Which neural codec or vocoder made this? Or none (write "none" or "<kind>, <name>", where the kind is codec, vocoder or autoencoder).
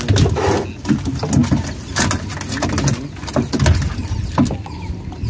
none